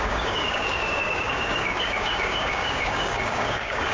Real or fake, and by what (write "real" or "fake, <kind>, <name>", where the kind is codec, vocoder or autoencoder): fake, codec, DAC